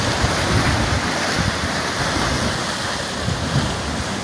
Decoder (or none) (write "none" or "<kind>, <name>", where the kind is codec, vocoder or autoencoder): none